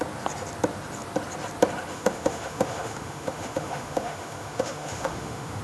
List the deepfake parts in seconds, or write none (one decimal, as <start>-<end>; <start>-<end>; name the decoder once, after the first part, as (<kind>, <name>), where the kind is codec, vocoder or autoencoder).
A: 1.9-5.6 (autoencoder, DAC-VAE)